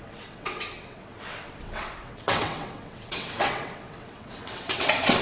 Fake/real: fake